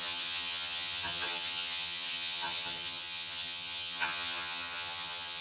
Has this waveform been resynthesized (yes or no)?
yes